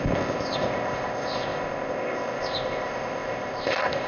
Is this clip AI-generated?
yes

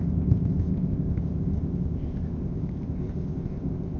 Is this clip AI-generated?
yes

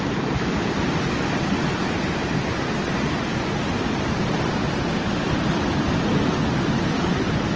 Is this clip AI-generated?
no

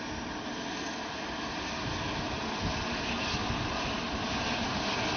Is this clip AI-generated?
no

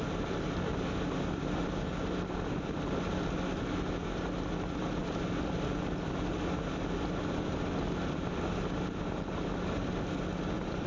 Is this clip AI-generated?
no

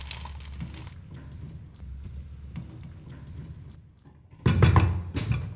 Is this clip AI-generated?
no